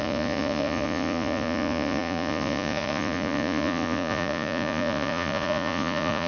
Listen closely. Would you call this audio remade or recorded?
remade